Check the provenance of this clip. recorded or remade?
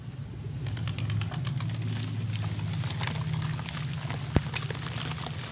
recorded